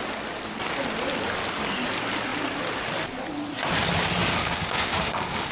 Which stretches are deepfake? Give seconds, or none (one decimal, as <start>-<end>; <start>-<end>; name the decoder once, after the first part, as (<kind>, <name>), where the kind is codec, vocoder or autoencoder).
4.4-5.5 (codec, DAC)